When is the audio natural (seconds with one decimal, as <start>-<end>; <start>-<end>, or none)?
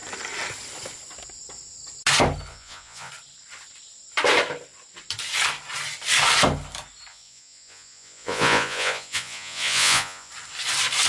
0.0-2.5; 3.1-7.1; 10.3-11.1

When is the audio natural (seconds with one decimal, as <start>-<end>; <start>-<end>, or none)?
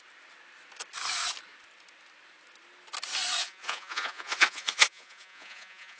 0.0-3.4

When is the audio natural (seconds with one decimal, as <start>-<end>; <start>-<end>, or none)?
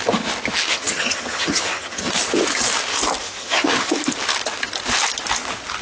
0.0-0.7; 2.1-3.4; 3.9-5.8